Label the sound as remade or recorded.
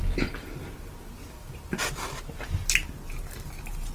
recorded